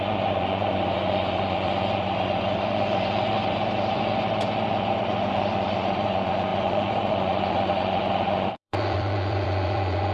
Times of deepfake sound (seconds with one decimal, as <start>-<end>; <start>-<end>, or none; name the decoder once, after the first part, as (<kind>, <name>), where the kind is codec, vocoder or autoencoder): 0.0-10.1 (vocoder, Vocos)